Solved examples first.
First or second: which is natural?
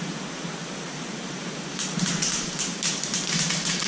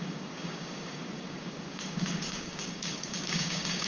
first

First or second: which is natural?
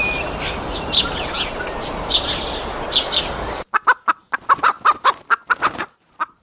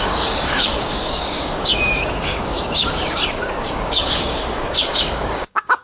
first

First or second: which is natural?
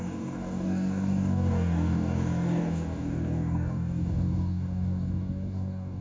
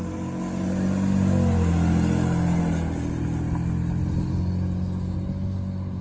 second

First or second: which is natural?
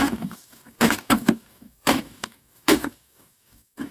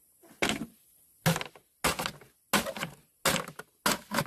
second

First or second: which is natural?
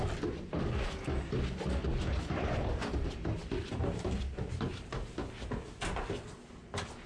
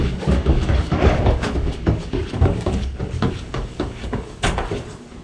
first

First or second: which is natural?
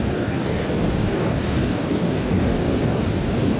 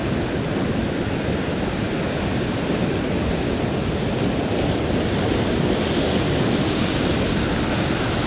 second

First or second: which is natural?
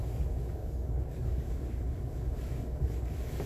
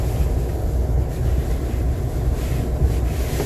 second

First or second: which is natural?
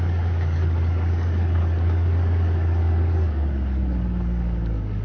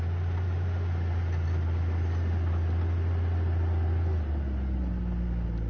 second